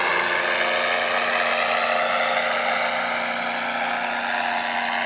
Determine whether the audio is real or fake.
real